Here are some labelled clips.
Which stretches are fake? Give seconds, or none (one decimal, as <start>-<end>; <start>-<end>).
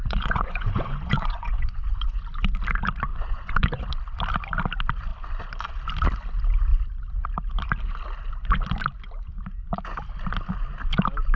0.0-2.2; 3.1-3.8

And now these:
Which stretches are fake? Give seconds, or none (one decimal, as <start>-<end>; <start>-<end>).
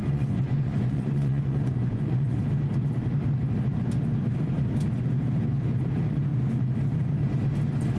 0.0-2.4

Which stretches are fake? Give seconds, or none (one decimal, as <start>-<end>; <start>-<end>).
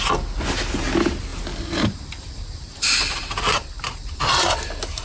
1.3-4.3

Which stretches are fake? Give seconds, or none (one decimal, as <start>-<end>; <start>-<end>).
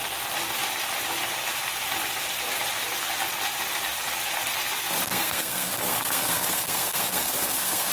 5.1-7.9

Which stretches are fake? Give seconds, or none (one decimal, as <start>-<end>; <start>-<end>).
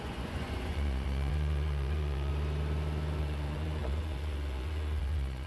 0.0-2.3; 3.2-5.5